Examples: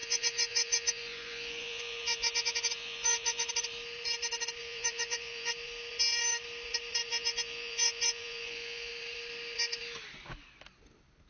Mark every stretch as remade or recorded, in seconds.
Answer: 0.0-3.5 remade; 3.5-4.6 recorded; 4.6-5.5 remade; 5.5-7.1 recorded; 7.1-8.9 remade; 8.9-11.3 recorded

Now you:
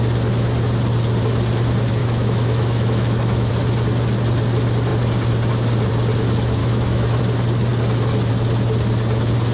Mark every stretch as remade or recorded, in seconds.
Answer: 0.0-2.0 recorded; 2.0-3.5 remade; 3.5-6.6 recorded; 6.6-7.2 remade; 7.2-9.5 recorded